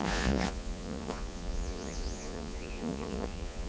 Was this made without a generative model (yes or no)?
no